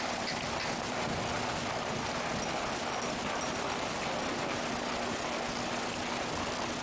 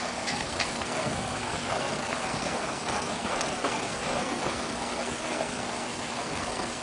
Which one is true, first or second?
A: first